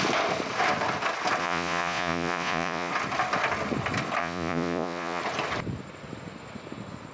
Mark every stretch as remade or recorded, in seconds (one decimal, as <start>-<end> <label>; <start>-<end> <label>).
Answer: 0.0-1.4 recorded; 1.4-2.9 remade; 2.9-4.2 recorded; 4.2-5.2 remade; 5.2-7.1 recorded